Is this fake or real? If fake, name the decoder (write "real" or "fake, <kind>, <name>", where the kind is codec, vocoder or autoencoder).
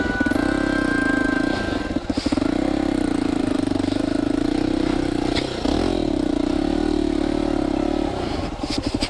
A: real